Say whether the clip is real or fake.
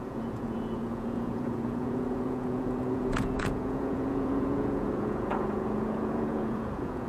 fake